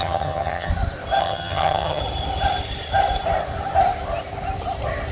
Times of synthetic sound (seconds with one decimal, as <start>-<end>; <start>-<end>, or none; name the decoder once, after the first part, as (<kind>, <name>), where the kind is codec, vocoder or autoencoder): 0.0-0.7 (vocoder, HiFi-GAN); 1.2-2.0